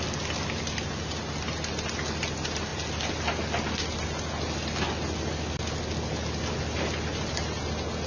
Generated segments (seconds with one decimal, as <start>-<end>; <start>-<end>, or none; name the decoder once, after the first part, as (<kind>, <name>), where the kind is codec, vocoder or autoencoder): none